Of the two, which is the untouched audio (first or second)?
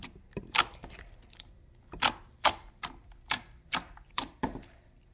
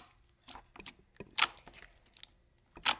second